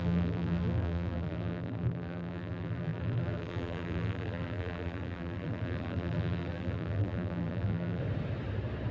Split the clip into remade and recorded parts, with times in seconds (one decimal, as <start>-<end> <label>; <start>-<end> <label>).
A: 0.0-8.0 remade; 8.0-8.9 recorded